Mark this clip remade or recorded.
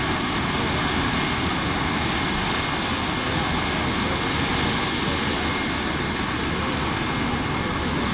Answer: recorded